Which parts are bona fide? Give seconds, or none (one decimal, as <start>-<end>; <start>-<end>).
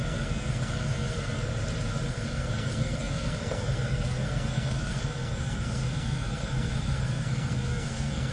1.5-2.1